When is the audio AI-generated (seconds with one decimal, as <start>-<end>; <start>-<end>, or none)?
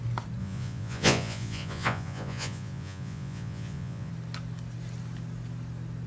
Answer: 0.4-4.1